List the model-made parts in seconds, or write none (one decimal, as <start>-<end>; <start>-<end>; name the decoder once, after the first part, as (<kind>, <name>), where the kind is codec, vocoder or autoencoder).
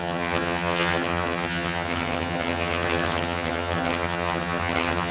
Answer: 0.0-5.1 (vocoder, HiFi-GAN)